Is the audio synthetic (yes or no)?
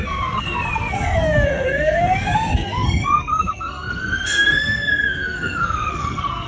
yes